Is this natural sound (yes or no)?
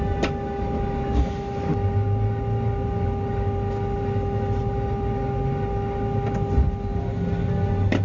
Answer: yes